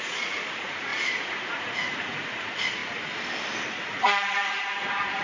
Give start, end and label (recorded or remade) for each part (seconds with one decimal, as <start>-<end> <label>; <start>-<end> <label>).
0.0-2.8 remade; 2.8-3.7 recorded; 3.7-5.2 remade